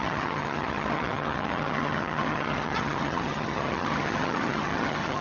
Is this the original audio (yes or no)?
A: no